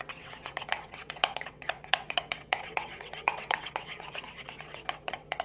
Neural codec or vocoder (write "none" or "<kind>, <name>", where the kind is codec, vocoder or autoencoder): vocoder, WaveNeXt